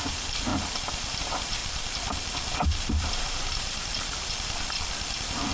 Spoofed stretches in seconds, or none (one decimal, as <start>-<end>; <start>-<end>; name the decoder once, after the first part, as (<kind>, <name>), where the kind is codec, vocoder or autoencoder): 0.0-1.6 (vocoder, BigVGAN v2); 2.5-3.9; 5.1-5.5